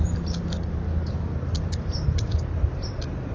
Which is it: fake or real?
real